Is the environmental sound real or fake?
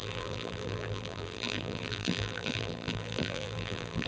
fake